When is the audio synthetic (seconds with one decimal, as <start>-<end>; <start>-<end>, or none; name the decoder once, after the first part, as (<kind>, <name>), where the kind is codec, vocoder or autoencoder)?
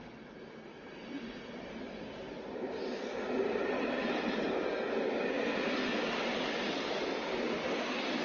none